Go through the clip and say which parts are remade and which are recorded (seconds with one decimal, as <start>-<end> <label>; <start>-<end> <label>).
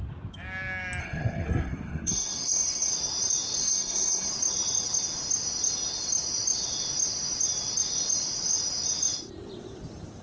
0.0-1.0 recorded; 1.0-2.9 remade; 2.9-3.6 recorded; 3.6-4.3 remade; 4.3-10.2 recorded